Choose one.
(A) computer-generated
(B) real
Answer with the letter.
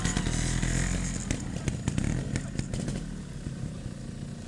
B